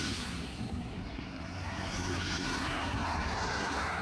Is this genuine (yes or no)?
no